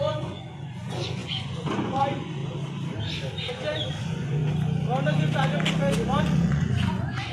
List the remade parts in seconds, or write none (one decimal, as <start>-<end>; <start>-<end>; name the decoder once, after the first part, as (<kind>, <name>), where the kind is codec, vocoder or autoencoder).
0.0-2.4 (vocoder, Vocos); 4.0-4.4; 6.2-7.3